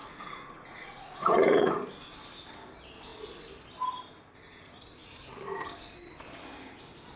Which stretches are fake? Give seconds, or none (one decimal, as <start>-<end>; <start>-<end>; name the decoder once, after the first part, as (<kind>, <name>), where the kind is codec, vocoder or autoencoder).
0.0-1.7 (vocoder, Vocos)